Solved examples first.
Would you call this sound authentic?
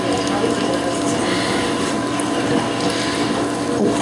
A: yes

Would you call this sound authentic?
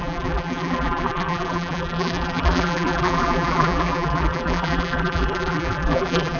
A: no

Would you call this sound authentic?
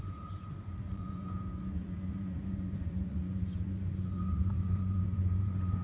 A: no